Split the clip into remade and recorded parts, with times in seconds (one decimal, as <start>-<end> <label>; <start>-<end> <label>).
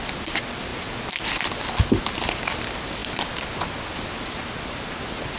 0.0-5.4 recorded